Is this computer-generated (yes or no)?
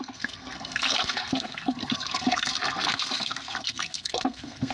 yes